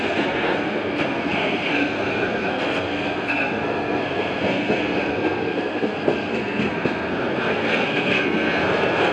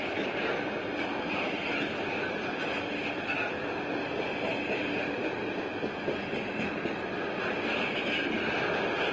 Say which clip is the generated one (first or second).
first